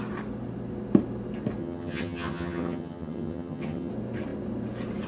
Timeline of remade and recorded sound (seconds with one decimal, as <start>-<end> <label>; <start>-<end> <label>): 0.0-1.6 recorded; 1.6-3.9 remade; 3.9-5.1 recorded